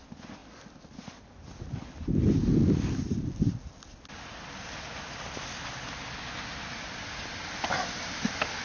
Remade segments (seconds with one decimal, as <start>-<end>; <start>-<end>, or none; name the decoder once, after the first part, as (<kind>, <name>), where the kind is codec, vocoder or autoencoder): none